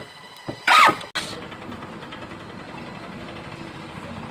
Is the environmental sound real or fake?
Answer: real